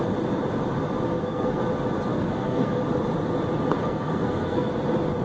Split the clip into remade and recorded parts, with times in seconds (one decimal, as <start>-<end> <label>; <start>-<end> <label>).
0.0-1.1 recorded; 1.1-1.6 remade; 1.6-2.1 recorded; 2.1-2.8 remade; 2.8-3.8 recorded; 3.8-4.7 remade; 4.7-5.2 recorded